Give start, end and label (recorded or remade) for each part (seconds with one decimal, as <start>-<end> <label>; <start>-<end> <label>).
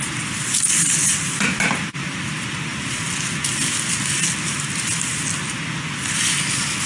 0.0-6.9 recorded